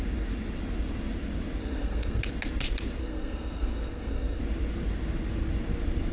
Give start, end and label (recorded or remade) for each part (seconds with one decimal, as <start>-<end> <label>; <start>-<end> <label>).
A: 0.0-1.6 recorded; 1.6-2.2 remade; 2.2-3.0 recorded; 3.0-4.4 remade; 4.4-6.1 recorded